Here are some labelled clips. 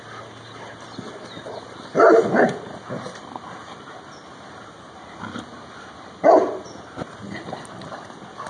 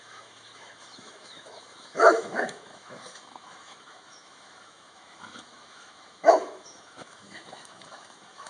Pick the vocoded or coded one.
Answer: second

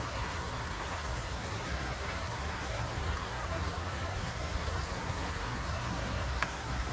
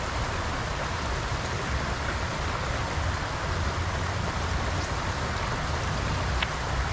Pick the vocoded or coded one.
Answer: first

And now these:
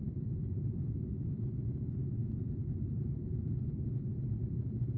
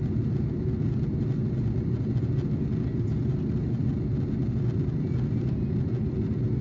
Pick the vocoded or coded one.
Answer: first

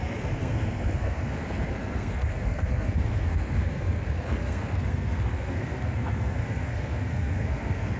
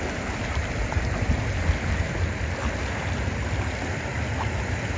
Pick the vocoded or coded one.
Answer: first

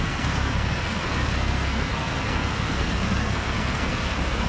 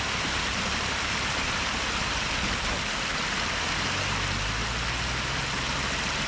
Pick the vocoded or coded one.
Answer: first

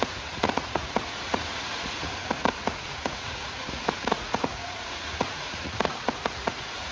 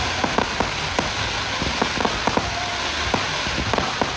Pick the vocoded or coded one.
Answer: first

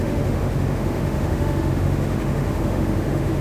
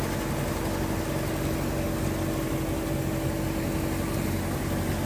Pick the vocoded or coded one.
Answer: first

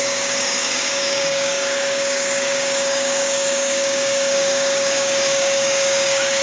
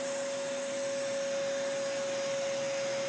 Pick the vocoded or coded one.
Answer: first